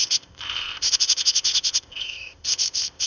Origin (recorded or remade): remade